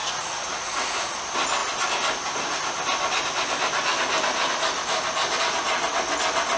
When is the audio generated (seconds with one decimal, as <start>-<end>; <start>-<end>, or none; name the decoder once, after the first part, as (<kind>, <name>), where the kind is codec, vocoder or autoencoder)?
0.0-1.2 (vocoder, Vocos)